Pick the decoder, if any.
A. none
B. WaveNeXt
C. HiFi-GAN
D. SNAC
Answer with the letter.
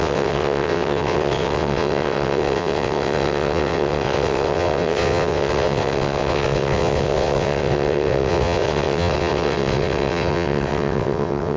B